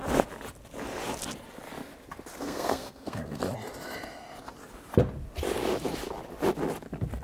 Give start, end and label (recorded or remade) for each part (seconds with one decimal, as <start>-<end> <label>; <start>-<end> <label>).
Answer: 0.0-2.4 recorded; 2.4-3.4 remade; 3.4-7.2 recorded